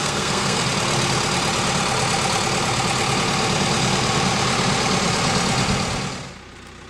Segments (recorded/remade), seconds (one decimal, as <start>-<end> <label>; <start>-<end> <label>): 0.0-0.6 remade; 0.6-6.9 recorded